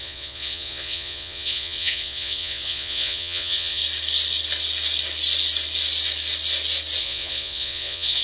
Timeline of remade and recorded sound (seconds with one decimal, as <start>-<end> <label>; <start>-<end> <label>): 0.0-3.8 remade; 3.8-7.0 recorded; 7.0-8.2 remade